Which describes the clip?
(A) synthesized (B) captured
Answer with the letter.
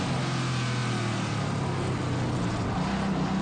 B